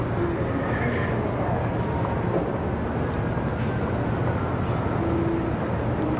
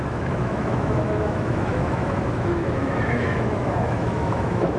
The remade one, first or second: second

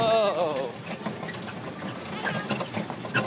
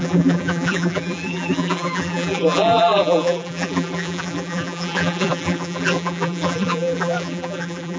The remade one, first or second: second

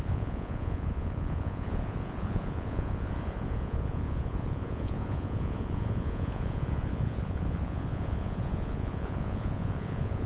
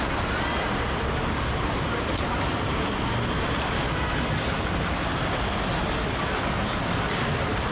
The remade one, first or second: first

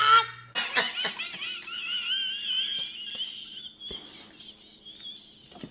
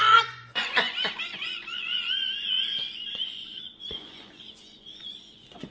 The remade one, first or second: second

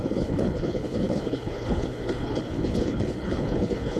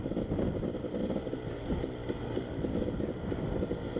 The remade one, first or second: first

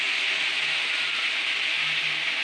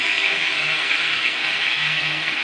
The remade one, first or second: second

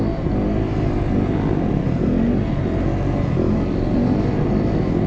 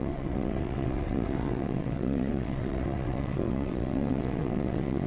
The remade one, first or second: second